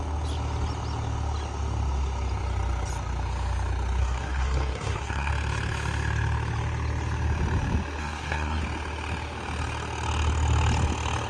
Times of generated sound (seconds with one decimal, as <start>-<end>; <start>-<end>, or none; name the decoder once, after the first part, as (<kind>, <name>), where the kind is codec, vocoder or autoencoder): 4.0-5.3 (codec, SNAC); 8.0-8.6